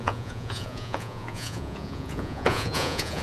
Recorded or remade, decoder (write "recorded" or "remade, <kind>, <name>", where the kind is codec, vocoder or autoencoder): remade, vocoder, Vocos